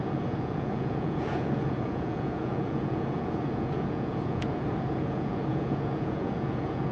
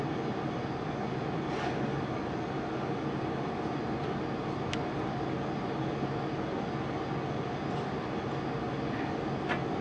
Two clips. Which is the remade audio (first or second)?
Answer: first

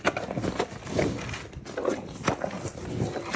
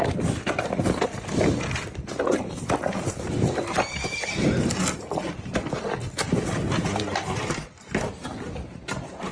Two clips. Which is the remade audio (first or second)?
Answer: second